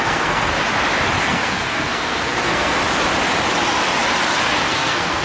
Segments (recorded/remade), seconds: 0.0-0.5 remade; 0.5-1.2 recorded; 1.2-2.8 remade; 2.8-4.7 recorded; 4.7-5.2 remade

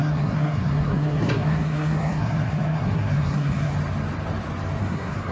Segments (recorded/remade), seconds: 0.0-3.7 remade; 3.7-4.8 recorded; 4.8-5.3 remade

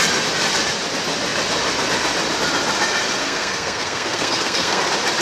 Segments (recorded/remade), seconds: 0.0-3.2 recorded; 3.2-4.8 remade; 4.8-5.2 recorded